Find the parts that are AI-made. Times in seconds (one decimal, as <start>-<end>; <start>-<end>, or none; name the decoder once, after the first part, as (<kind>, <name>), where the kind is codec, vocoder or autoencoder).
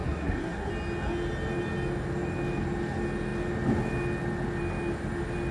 0.0-0.7 (codec, SNAC)